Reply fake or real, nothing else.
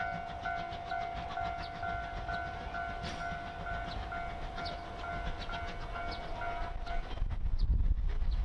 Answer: real